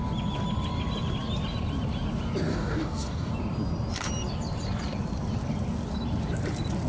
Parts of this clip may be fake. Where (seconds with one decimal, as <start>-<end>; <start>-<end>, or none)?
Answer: 2.5-3.3

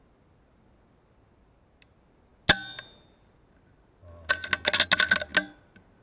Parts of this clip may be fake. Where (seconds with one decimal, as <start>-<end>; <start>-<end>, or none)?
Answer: none

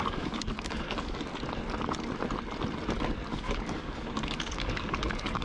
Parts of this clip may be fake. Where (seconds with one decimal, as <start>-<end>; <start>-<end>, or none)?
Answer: 0.0-1.3; 3.3-5.4

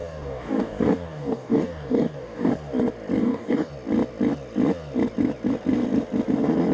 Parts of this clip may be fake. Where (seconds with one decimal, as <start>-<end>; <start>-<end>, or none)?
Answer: 0.0-2.5; 3.2-3.7

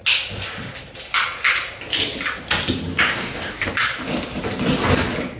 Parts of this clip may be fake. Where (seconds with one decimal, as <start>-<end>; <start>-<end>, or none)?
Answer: 2.9-3.7